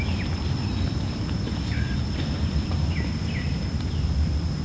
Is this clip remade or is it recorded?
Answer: remade